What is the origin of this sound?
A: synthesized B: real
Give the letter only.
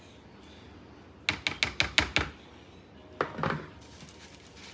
B